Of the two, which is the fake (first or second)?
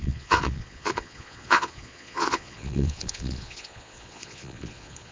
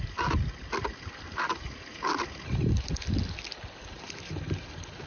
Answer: first